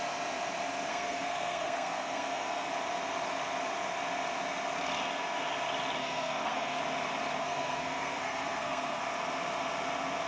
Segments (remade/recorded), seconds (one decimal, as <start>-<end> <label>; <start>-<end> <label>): 0.0-0.9 recorded; 0.9-2.7 remade; 2.7-6.0 recorded; 6.0-6.8 remade; 6.8-7.4 recorded; 7.4-9.0 remade; 9.0-10.3 recorded